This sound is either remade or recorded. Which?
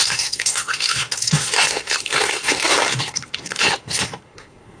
remade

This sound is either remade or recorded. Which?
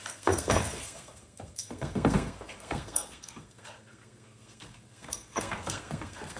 remade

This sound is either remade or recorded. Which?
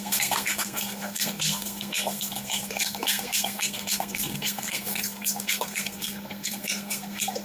remade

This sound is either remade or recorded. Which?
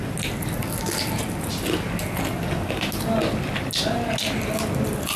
recorded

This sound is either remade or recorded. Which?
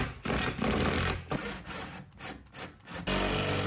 recorded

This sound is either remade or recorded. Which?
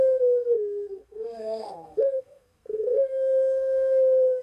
remade